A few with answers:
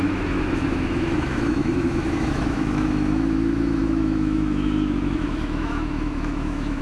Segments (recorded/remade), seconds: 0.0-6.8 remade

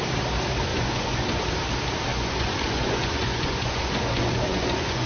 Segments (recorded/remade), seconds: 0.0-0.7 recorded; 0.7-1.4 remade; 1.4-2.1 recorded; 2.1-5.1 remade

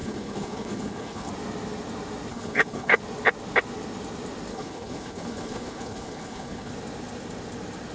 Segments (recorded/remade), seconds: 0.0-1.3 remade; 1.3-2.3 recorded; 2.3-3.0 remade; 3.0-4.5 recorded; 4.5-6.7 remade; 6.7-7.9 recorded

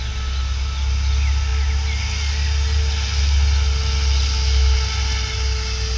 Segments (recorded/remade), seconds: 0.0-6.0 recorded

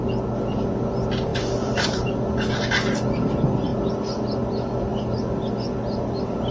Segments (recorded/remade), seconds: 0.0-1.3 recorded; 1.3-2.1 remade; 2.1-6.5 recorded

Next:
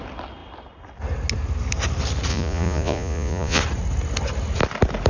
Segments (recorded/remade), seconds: 0.0-2.3 recorded; 2.3-3.6 remade; 3.6-5.1 recorded

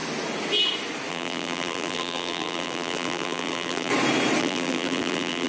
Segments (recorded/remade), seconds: 0.0-1.1 recorded; 1.1-3.9 remade; 3.9-4.4 recorded; 4.4-5.5 remade

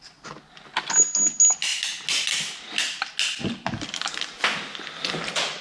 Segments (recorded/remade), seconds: 0.0-5.6 recorded